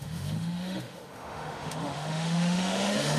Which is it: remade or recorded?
remade